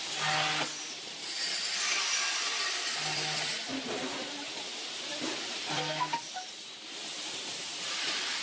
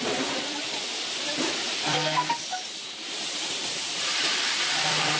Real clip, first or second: first